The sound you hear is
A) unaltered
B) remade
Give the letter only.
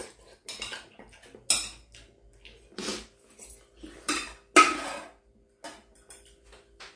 A